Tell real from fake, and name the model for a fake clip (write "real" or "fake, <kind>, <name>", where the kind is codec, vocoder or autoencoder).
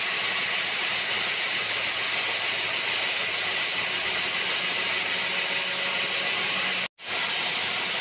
real